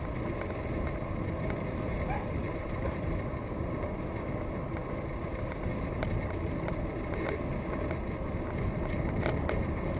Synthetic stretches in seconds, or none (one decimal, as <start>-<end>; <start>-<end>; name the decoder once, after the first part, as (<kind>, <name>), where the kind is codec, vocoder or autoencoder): 2.4-4.1 (vocoder, BigVGAN v2)